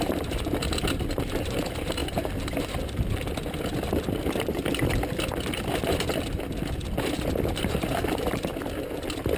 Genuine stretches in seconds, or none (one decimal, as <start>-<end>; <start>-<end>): 2.0-4.0; 4.6-7.5; 8.5-9.4